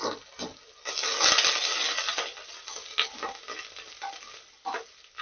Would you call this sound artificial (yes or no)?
no